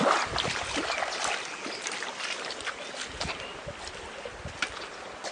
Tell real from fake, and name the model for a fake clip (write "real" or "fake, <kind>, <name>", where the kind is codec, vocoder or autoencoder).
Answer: real